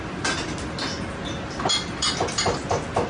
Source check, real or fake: real